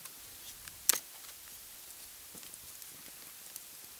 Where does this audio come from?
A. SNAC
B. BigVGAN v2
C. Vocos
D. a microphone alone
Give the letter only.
D